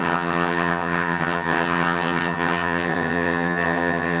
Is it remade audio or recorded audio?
remade